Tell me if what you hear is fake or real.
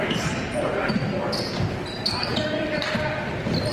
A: fake